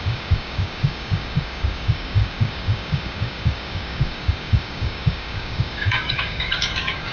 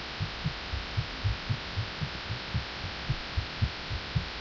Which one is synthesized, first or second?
first